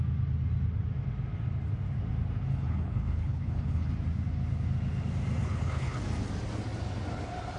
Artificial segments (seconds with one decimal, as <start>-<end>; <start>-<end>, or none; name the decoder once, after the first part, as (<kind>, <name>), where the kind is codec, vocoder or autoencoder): 2.5-3.9 (codec, HILCodec); 5.4-6.0